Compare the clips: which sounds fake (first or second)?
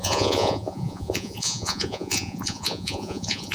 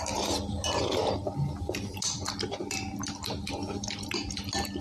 first